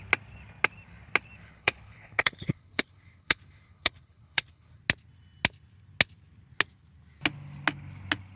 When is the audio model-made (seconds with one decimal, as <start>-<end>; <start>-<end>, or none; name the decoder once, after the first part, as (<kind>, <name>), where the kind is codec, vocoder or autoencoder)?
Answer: 1.4-4.8 (codec, HILCodec)